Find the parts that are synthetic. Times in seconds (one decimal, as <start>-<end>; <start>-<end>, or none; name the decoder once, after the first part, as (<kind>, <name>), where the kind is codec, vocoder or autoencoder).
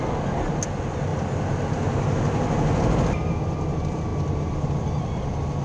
none